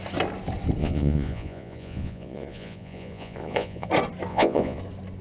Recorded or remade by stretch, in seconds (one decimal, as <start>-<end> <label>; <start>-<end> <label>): 0.0-0.8 recorded; 0.8-3.9 remade; 3.9-4.3 recorded; 4.3-4.8 remade; 4.8-5.2 recorded